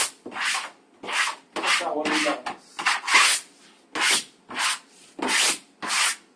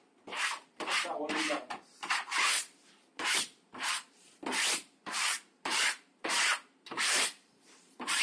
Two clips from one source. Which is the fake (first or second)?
second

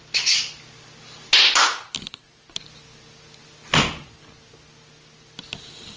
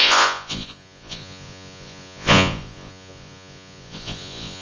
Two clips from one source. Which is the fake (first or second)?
second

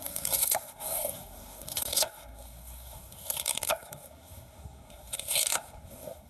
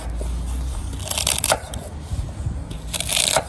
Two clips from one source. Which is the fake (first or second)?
first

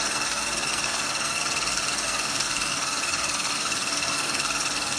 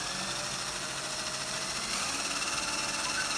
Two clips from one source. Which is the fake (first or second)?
first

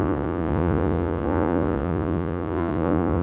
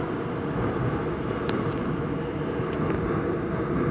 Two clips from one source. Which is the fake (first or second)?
first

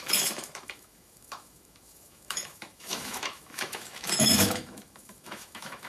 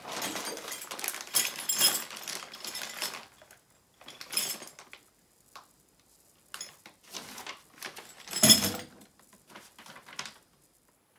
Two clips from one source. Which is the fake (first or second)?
first